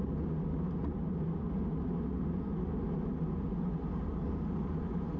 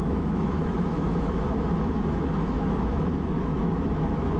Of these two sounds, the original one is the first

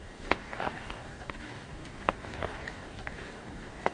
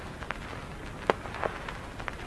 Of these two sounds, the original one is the second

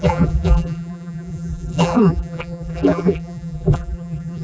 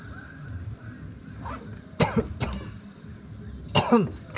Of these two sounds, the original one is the second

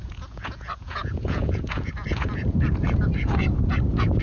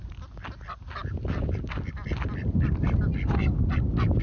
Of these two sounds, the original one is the second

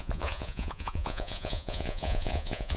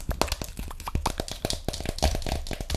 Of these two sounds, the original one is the second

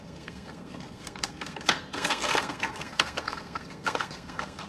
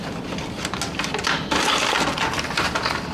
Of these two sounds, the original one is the second